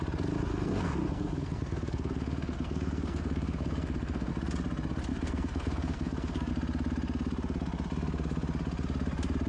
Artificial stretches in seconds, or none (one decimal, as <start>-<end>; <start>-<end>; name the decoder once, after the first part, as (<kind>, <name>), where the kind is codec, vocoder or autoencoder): 0.5-4.3 (codec, SNAC); 5.1-6.5